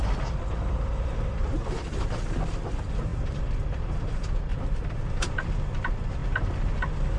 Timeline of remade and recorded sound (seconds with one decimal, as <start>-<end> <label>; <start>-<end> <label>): 0.0-4.5 remade; 4.5-5.1 recorded; 5.1-6.2 remade; 6.2-6.8 recorded; 6.8-7.2 remade